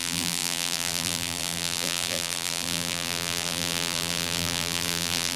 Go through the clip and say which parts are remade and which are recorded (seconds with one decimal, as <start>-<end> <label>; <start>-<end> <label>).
0.0-5.4 remade